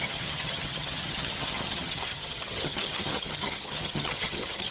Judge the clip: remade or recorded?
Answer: remade